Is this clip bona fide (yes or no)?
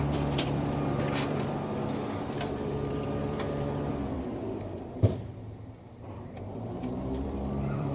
no